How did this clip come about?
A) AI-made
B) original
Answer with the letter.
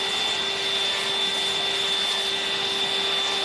B